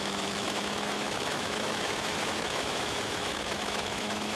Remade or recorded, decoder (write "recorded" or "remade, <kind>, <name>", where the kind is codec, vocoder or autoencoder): remade, autoencoder, DAC-VAE